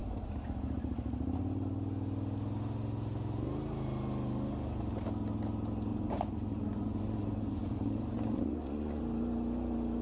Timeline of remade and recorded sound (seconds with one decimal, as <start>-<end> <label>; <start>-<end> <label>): 0.0-5.9 recorded; 5.9-9.0 remade; 9.0-10.0 recorded